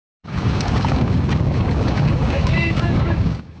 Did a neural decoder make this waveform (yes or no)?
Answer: yes